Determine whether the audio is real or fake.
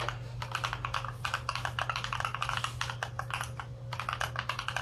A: real